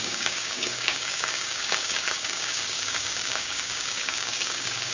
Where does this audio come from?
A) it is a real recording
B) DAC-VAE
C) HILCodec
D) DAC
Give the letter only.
D